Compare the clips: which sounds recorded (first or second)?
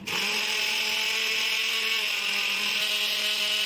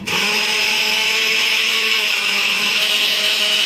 first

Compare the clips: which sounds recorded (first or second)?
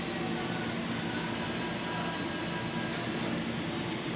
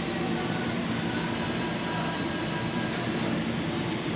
first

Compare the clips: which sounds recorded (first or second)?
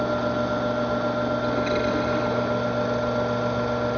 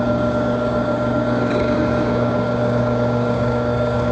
first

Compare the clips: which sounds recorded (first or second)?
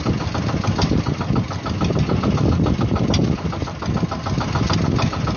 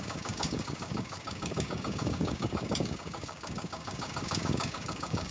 first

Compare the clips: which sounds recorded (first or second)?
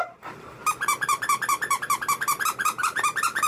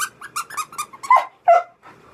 second